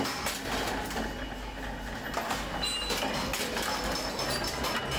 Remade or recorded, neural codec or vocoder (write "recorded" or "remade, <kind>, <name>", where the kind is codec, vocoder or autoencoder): recorded